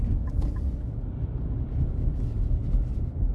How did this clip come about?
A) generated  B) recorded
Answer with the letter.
B